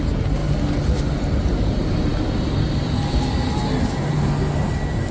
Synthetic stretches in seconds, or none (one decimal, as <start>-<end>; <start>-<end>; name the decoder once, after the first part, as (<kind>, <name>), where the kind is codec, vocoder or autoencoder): none